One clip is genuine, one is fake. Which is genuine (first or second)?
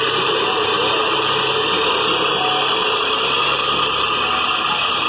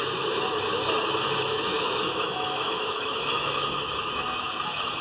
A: first